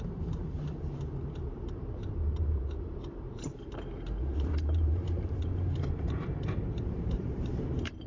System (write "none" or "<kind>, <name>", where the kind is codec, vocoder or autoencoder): vocoder, BigVGAN v2